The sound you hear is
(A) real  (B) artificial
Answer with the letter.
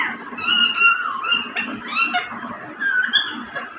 A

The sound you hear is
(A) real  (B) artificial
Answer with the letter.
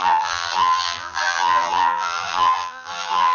B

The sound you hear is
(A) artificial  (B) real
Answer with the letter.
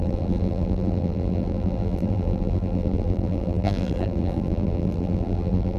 A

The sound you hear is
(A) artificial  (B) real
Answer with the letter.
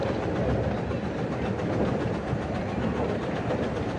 B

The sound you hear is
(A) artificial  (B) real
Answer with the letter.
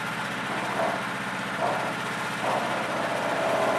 B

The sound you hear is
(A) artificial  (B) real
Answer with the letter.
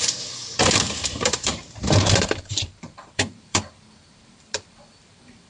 A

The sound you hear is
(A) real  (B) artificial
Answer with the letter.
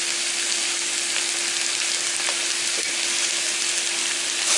A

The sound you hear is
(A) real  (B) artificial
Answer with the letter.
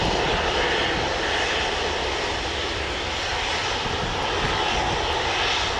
A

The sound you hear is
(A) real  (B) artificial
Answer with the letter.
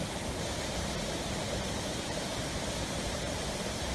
B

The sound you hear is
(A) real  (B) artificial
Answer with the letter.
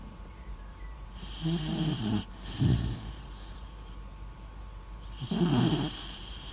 B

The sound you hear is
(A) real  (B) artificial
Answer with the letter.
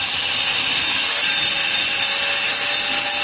A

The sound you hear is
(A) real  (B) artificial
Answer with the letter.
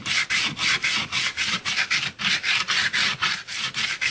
B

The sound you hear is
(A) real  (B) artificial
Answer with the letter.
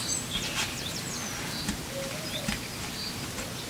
A